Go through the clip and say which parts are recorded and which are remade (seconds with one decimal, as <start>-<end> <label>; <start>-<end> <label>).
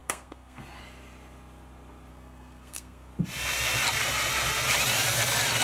0.0-0.6 remade; 0.6-2.1 recorded; 2.1-3.1 remade; 3.1-5.6 recorded